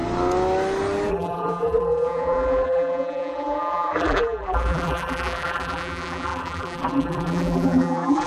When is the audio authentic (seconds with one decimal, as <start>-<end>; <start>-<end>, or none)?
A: 0.0-1.1